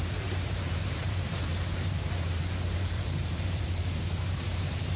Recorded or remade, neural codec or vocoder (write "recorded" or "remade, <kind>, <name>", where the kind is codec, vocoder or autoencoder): remade, vocoder, BigVGAN v2